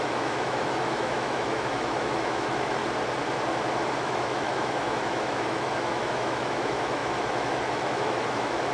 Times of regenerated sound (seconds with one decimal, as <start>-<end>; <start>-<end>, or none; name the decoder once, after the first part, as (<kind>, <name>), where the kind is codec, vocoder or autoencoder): 0.0-2.8 (autoencoder, DAC-VAE); 4.0-8.7